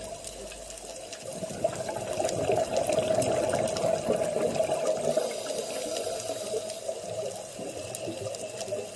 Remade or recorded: recorded